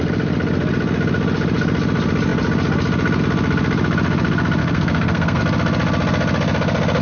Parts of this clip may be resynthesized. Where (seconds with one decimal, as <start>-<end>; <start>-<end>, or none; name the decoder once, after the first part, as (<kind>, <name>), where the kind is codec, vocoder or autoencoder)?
4.6-5.4 (codec, SNAC)